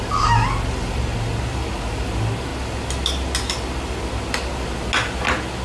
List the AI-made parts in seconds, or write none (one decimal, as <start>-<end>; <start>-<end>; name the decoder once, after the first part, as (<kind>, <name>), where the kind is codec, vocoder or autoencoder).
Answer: none